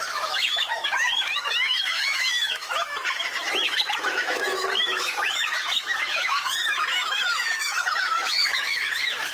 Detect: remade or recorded remade